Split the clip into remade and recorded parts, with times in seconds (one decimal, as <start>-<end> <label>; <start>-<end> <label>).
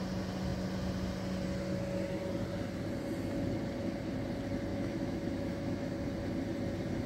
0.0-4.7 recorded; 4.7-5.9 remade; 5.9-7.1 recorded